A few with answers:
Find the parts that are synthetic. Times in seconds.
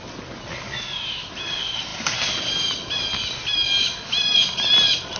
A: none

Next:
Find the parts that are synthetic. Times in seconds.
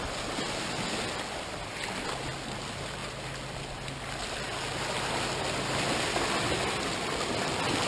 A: none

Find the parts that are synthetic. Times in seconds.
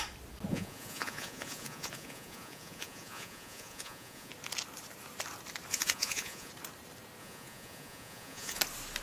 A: 0.5-4.3 (vocoder, Vocos); 5.7-6.5; 7.2-8.6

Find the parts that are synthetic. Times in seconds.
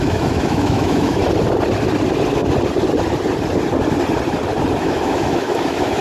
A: 0.0-1.2 (autoencoder, DAC-VAE); 4.8-6.0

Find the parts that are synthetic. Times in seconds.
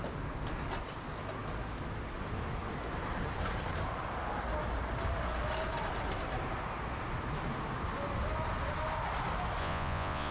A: 9.6-10.3 (vocoder, Vocos)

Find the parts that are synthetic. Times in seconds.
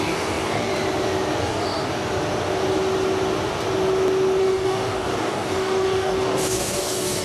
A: 0.0-0.7 (codec, DAC); 1.4-1.9; 4.4-7.2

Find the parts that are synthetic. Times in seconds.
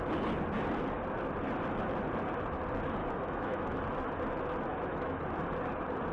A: 3.0-3.8 (autoencoder, DAC-VAE); 4.7-5.2